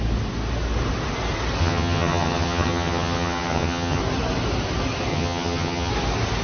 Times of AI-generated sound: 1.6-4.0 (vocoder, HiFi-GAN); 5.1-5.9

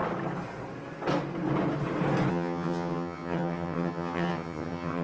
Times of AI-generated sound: 2.3-5.0 (vocoder, HiFi-GAN)

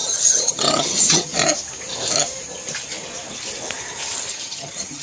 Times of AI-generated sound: 0.0-1.3 (vocoder, HiFi-GAN); 4.3-5.0

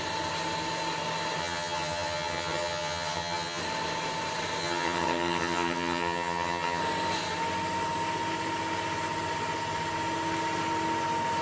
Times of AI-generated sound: 1.4-3.6 (vocoder, HiFi-GAN); 4.6-6.8